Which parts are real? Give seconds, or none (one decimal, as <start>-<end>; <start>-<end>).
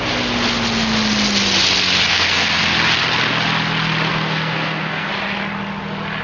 0.0-2.1; 2.6-4.1; 5.1-6.2